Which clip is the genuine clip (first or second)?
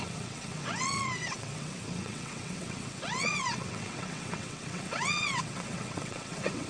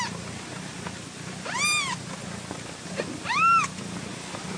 second